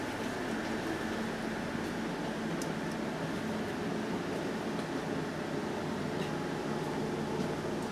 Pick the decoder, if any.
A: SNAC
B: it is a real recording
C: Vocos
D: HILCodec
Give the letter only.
B